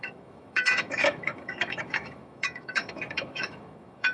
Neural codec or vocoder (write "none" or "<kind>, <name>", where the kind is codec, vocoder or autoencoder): autoencoder, DAC-VAE